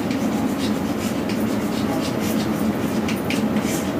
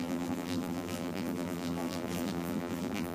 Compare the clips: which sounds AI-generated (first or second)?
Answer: second